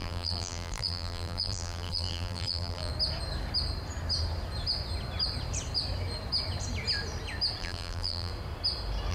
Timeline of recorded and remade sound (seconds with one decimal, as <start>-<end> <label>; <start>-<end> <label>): 0.0-2.9 remade; 2.9-7.6 recorded; 7.6-8.3 remade; 8.3-9.1 recorded